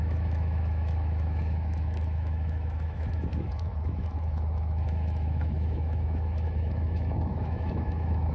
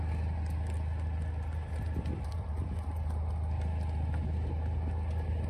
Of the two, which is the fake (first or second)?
first